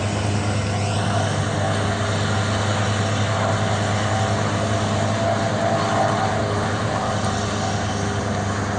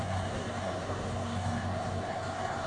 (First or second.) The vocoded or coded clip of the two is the second